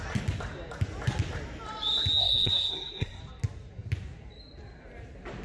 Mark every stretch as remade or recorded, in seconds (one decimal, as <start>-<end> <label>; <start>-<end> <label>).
0.0-2.2 recorded; 2.2-3.2 remade; 3.2-5.4 recorded